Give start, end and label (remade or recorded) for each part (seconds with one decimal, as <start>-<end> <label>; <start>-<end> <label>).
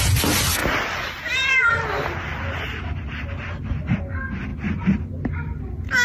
0.0-6.0 recorded